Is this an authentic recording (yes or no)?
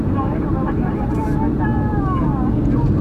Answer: yes